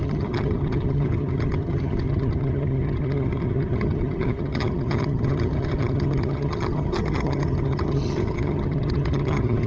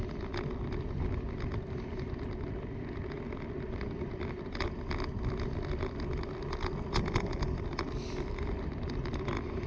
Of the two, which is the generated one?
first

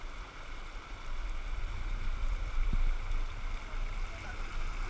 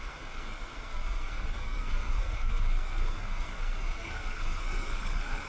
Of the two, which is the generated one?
second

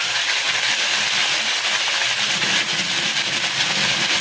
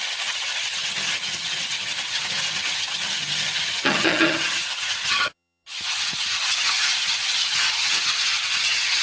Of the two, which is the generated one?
second